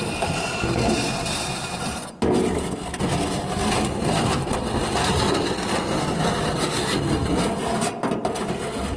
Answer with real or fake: real